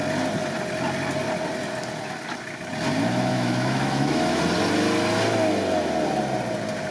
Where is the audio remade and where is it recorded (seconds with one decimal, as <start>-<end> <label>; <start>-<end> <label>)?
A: 0.0-3.3 recorded; 3.3-4.4 remade; 4.4-6.9 recorded